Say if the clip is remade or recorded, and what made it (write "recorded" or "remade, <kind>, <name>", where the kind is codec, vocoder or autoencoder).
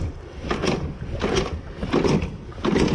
recorded